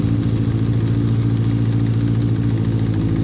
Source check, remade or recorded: recorded